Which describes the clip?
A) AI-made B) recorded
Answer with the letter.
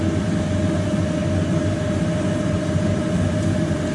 B